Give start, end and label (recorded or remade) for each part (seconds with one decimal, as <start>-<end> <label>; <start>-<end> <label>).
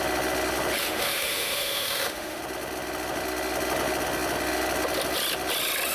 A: 0.0-0.8 recorded; 0.8-2.4 remade; 2.4-5.9 recorded